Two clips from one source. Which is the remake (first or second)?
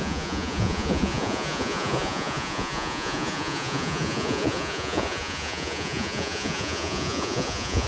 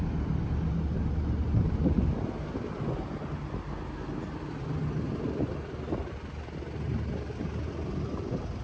first